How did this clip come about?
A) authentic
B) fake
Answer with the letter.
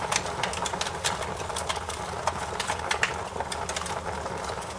A